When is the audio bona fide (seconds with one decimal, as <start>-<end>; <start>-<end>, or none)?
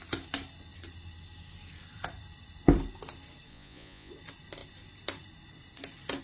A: 0.0-3.5; 4.1-6.2